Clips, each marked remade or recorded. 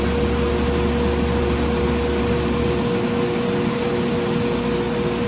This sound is recorded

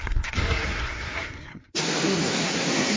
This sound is remade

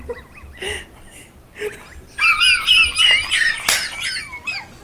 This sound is recorded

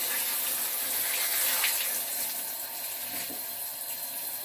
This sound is recorded